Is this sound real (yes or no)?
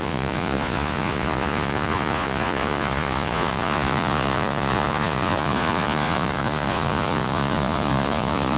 no